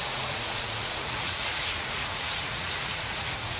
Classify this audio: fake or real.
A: fake